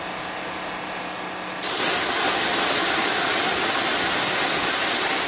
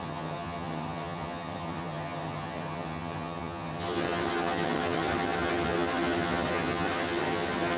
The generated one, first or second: second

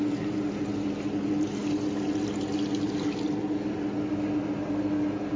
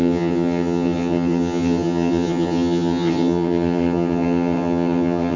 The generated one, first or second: second